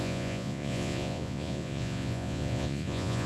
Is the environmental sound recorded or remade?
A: remade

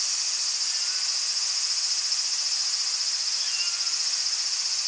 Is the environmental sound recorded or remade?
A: recorded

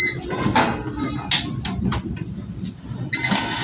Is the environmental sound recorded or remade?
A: recorded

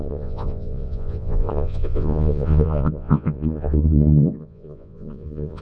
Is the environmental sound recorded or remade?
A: remade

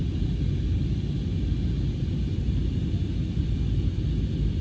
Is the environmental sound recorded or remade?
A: recorded